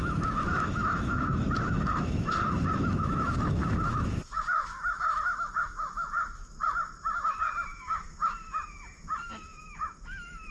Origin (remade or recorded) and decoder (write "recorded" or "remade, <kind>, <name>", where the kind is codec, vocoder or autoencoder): remade, autoencoder, DAC-VAE